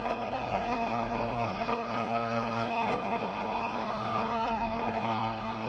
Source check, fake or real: fake